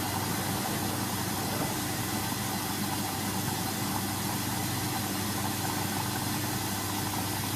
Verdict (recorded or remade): recorded